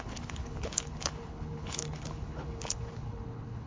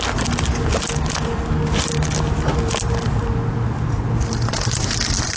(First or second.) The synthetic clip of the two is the first